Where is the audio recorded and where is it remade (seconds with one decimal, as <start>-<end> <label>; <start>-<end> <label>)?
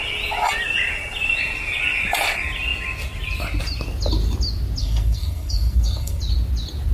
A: 0.0-4.8 recorded; 4.8-6.2 remade; 6.2-6.9 recorded